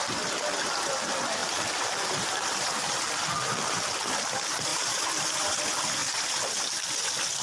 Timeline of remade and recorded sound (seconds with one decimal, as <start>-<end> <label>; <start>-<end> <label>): 0.0-1.4 recorded; 1.4-3.0 remade; 3.0-4.7 recorded; 4.7-5.6 remade; 5.6-7.4 recorded